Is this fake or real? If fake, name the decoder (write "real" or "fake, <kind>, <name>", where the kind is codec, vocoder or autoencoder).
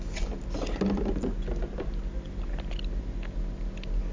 real